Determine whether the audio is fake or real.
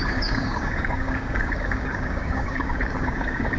fake